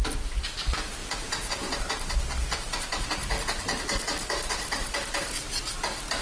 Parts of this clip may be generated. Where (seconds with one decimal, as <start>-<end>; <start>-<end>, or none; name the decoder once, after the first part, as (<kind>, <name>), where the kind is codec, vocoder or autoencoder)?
1.0-1.8 (vocoder, Vocos)